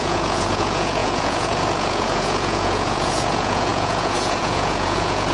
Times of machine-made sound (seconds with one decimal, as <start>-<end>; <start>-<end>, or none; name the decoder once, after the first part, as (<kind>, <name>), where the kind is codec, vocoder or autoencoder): 0.0-5.3 (vocoder, Vocos)